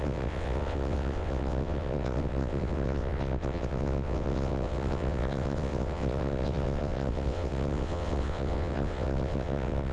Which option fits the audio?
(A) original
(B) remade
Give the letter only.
B